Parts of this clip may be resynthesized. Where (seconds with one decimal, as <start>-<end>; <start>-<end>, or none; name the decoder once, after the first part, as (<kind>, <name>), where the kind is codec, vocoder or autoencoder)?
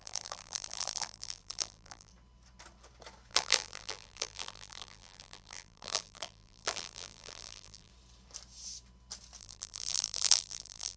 0.0-2.1 (vocoder, BigVGAN v2); 3.3-7.9; 9.4-11.0